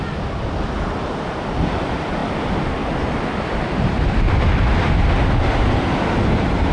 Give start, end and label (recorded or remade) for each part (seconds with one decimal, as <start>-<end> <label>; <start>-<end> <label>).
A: 0.0-2.2 recorded; 2.2-4.3 remade; 4.3-6.7 recorded